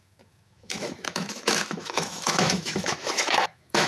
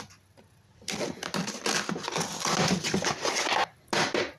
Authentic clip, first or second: second